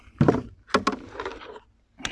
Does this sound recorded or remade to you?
recorded